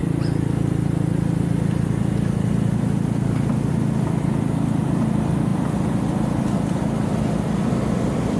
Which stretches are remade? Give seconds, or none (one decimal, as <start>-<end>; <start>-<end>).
none